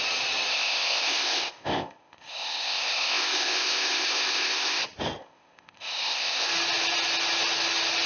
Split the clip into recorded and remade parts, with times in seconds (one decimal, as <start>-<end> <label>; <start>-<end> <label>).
0.0-0.5 recorded; 0.5-4.8 remade; 4.8-5.2 recorded; 5.2-6.5 remade; 6.5-8.1 recorded